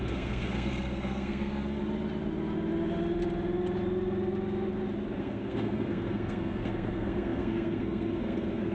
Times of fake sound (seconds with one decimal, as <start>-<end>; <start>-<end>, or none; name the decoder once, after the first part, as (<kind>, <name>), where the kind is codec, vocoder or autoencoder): 0.0-1.8 (codec, SNAC); 5.2-8.7